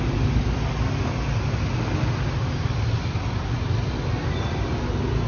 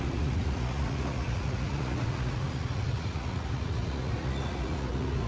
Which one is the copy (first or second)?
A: second